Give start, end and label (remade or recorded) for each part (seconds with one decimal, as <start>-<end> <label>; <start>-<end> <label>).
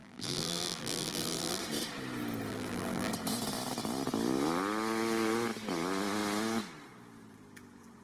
0.0-1.6 remade; 1.6-2.5 recorded; 2.5-3.1 remade; 3.1-8.0 recorded